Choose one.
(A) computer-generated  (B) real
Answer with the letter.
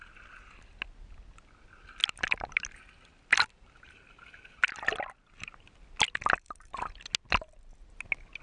B